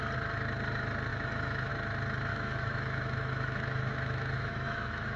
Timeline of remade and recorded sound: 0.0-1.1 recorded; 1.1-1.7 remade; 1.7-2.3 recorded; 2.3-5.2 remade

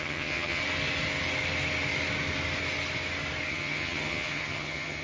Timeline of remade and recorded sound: 0.0-0.6 remade; 0.6-3.5 recorded; 3.5-5.0 remade

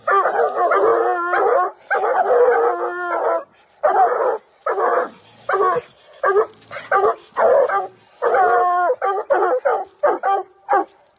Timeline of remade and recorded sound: 0.0-11.2 recorded

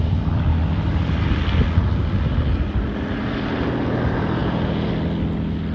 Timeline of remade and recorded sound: 0.0-4.4 recorded; 4.4-4.9 remade; 4.9-5.7 recorded

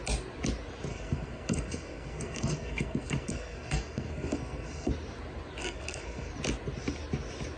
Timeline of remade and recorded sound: 0.0-0.9 recorded; 0.9-4.9 remade; 4.9-5.6 recorded; 5.6-6.3 remade; 6.3-7.6 recorded

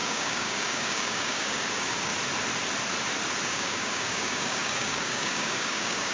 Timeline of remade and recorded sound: 0.0-2.1 remade; 2.1-3.4 recorded; 3.4-6.1 remade